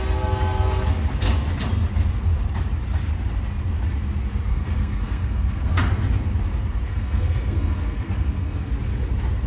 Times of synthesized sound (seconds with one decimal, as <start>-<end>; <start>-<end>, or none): 4.5-5.8; 6.9-8.7